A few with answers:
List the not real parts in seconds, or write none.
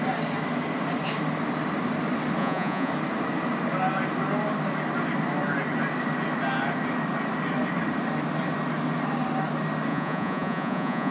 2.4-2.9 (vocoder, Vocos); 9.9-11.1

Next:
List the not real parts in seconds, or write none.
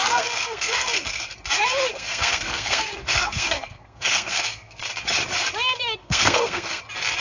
0.0-1.3 (codec, SNAC); 1.9-4.9; 6.0-6.8